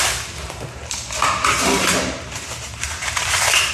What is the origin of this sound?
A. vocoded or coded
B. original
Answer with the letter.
A